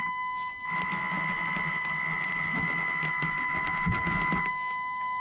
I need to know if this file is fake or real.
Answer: real